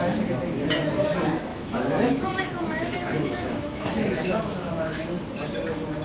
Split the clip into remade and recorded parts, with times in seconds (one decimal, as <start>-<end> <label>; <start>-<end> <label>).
0.0-1.5 recorded; 1.5-5.0 remade; 5.0-6.0 recorded